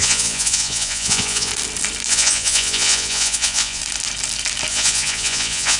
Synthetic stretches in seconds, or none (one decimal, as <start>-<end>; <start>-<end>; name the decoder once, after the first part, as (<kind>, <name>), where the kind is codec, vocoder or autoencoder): 0.0-1.5 (vocoder, Vocos); 2.1-3.8; 4.7-5.8